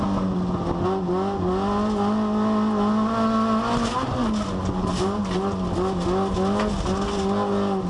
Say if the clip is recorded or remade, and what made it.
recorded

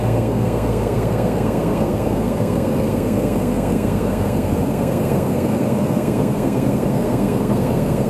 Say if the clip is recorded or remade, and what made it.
remade, codec, SNAC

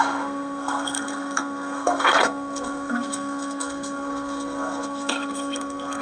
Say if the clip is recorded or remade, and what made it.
remade, codec, SNAC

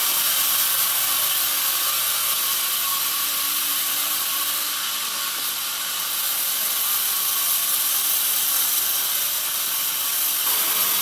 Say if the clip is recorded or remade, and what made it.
recorded